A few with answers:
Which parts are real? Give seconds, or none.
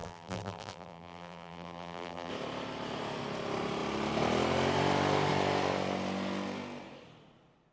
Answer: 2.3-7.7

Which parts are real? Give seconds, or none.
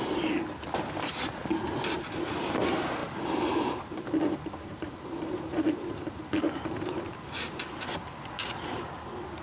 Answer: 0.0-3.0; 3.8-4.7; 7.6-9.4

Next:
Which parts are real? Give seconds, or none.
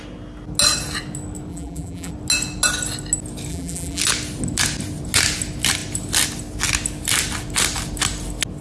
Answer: 0.0-1.5; 2.1-3.5; 4.0-8.6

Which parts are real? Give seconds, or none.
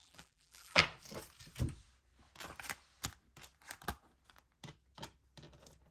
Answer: 0.8-5.9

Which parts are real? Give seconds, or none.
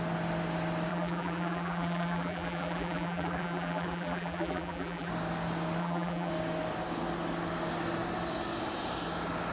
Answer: 0.0-0.9; 5.1-5.8; 6.3-9.5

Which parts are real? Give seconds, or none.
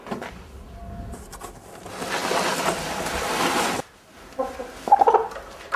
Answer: 0.0-5.8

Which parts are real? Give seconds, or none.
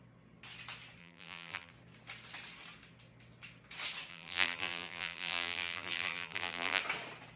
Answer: 0.0-1.0; 1.7-4.1; 6.8-7.4